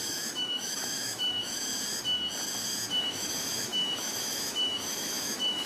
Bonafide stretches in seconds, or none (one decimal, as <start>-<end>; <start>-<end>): 1.7-3.0